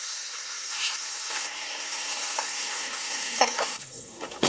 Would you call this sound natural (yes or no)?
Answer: no